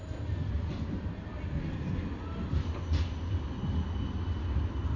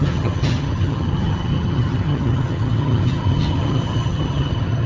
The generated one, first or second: second